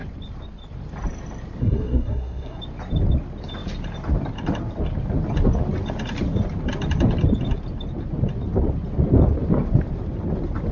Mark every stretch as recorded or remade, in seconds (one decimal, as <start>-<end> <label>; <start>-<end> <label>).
0.0-1.6 recorded; 1.6-2.6 remade; 2.6-10.7 recorded